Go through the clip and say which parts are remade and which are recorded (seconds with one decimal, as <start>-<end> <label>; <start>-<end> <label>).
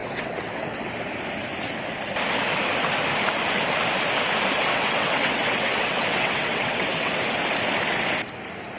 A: 0.0-0.9 remade; 0.9-4.7 recorded; 4.7-7.1 remade; 7.1-8.8 recorded